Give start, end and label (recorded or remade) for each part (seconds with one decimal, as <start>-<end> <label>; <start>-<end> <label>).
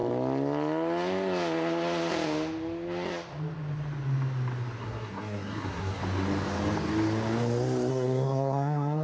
0.0-4.8 recorded; 4.8-6.0 remade; 6.0-7.9 recorded; 7.9-9.0 remade